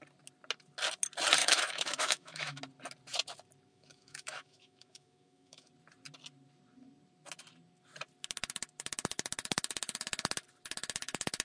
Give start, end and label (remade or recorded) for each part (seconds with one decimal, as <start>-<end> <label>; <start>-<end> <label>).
0.0-1.4 recorded; 1.4-2.6 remade; 2.6-3.7 recorded; 3.7-5.7 remade; 5.7-11.4 recorded

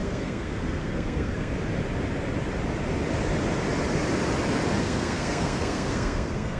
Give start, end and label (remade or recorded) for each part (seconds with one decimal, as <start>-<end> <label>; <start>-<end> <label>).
0.0-1.5 remade; 1.5-4.8 recorded; 4.8-6.6 remade

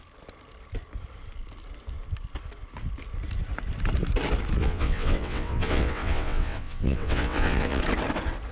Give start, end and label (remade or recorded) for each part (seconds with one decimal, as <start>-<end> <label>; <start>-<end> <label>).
0.0-4.6 recorded; 4.6-7.8 remade; 7.8-8.5 recorded

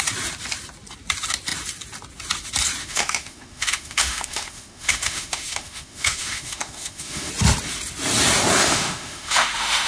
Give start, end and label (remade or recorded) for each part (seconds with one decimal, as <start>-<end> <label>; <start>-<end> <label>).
0.0-2.8 recorded; 2.8-7.3 remade; 7.3-8.6 recorded; 8.6-9.9 remade

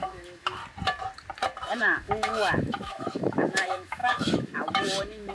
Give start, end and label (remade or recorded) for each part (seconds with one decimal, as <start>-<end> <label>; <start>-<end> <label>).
0.0-0.6 remade; 0.6-1.8 recorded; 1.8-5.3 remade

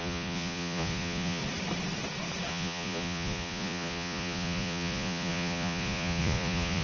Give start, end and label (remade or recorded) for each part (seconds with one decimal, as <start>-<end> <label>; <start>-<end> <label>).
0.0-1.4 remade; 1.4-2.5 recorded; 2.5-6.8 remade

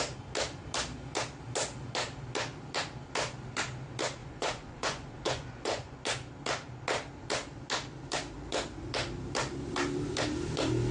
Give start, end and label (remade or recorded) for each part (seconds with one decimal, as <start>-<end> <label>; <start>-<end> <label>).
0.0-4.2 recorded; 4.2-6.0 remade; 6.0-10.9 recorded